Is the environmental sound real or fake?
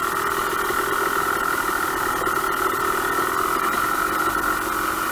real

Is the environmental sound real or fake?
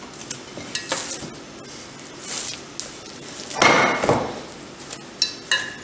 real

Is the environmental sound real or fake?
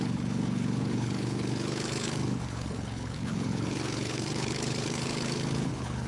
fake